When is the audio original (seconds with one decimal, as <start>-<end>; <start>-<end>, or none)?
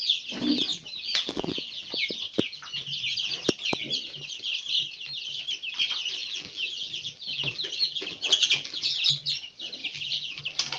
0.0-0.7; 2.0-6.2; 9.1-9.8; 10.4-10.8